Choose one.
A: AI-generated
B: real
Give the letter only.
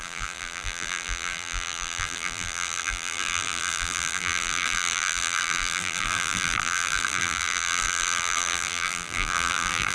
A